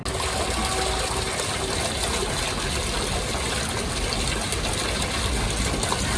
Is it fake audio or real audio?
real